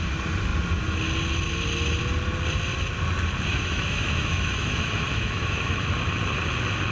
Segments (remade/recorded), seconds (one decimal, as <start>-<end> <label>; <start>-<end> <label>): 0.0-3.5 recorded; 3.5-5.9 remade; 5.9-6.9 recorded